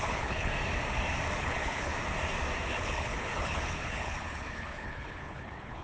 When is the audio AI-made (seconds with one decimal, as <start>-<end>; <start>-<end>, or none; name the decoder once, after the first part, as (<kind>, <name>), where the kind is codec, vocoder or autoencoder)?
0.0-0.5 (codec, HILCodec); 1.4-1.9; 2.7-5.8